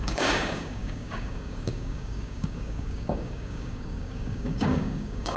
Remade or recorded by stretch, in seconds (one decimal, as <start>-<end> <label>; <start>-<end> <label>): 0.0-5.4 remade